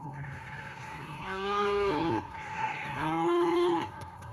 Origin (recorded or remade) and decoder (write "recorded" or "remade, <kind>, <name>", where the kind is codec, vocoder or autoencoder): remade, codec, SNAC